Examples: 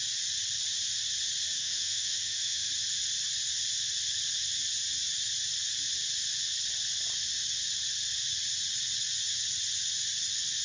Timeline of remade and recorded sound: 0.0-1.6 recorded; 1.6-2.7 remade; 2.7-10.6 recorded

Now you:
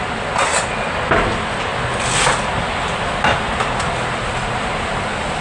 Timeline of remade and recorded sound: 0.0-5.4 recorded

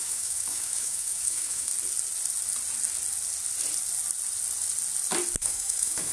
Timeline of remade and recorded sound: 0.0-1.7 remade; 1.7-5.4 recorded; 5.4-6.1 remade

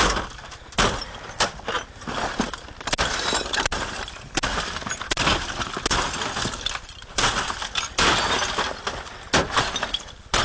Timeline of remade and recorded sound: 0.0-10.4 recorded

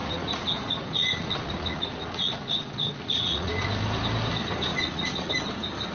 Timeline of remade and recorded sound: 0.0-3.5 remade; 3.5-4.7 recorded; 4.7-5.3 remade; 5.3-5.9 recorded